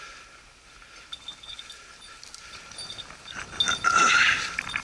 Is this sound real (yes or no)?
yes